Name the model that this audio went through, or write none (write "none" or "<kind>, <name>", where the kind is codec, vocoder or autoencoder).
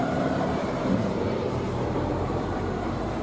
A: vocoder, BigVGAN v2